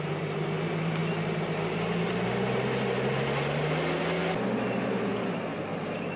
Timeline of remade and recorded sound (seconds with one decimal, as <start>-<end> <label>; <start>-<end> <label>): 0.0-6.2 recorded